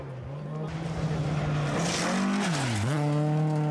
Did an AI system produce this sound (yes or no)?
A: no